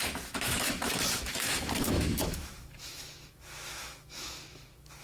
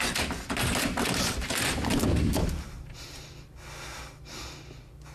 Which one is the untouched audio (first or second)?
second